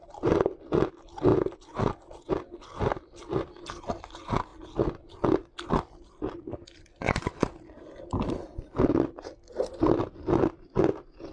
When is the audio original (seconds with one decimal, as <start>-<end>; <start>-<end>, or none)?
0.0-11.3